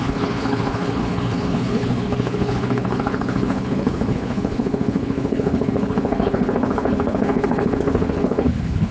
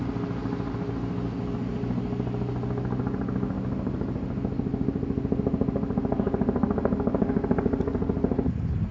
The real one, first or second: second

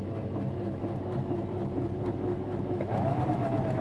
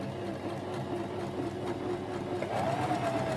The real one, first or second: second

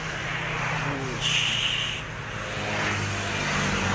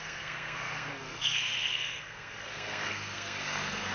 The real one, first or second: first